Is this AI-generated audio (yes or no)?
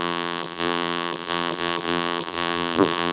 yes